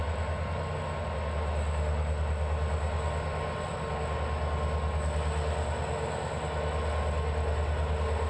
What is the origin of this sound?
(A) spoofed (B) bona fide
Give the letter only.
B